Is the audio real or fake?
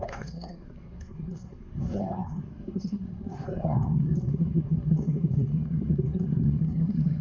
fake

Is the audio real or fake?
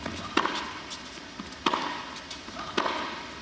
real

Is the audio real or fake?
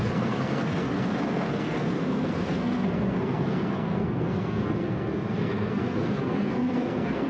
fake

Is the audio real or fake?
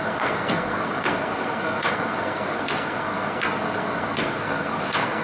fake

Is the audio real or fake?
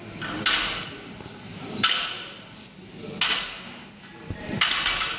real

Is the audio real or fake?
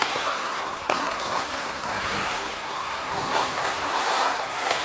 fake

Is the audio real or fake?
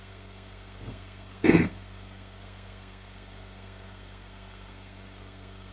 fake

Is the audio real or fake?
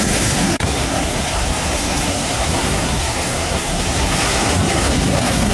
fake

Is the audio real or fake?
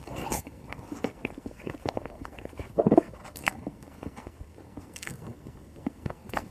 fake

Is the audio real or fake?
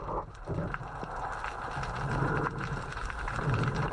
real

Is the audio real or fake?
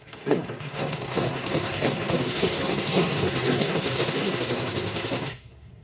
fake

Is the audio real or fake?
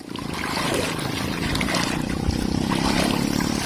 real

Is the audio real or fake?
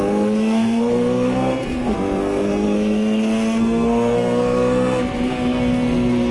fake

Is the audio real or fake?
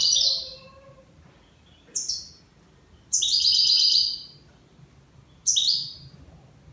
real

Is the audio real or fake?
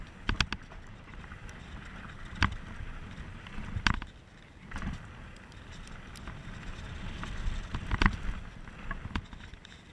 real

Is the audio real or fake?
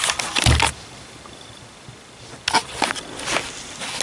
real